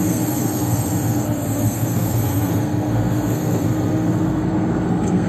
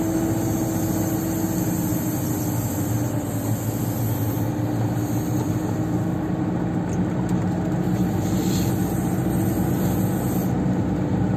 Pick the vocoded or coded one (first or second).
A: first